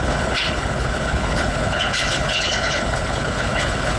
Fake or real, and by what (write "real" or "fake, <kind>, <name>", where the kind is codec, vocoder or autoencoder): fake, codec, HILCodec